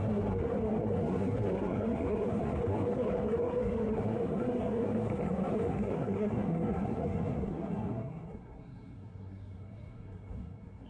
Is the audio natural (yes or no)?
no